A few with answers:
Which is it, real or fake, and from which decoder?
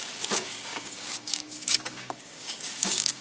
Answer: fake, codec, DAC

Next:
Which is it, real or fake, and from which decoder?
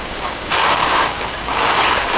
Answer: fake, codec, DAC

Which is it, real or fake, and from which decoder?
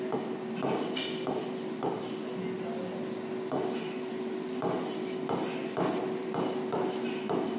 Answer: real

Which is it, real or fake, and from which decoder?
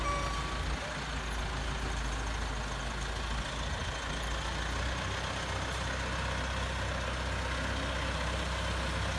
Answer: real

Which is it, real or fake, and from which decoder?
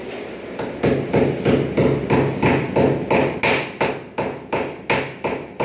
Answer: real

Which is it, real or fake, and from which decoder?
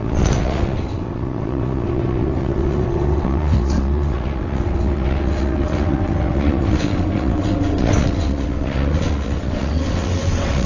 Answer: fake, vocoder, WaveNeXt